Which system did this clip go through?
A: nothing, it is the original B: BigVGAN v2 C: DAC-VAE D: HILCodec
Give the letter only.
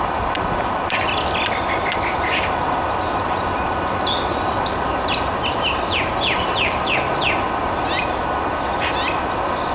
A